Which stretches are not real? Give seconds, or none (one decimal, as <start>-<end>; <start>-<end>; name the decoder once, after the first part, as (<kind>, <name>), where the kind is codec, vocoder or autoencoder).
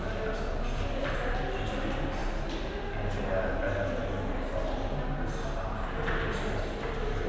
none